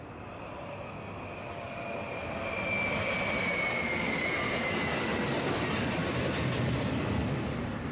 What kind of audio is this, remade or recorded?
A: recorded